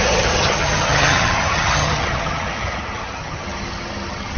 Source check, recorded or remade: remade